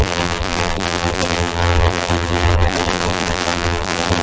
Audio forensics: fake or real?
fake